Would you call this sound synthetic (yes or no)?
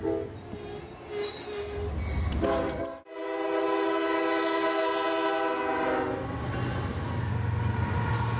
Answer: no